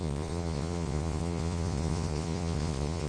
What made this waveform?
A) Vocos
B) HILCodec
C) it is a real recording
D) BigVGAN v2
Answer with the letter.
A